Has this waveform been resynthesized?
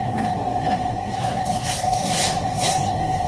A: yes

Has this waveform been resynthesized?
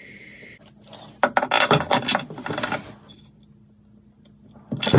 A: no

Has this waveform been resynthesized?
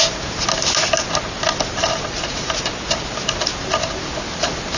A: no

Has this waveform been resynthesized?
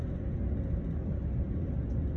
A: no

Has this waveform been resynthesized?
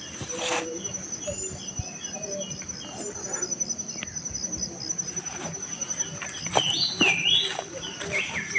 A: no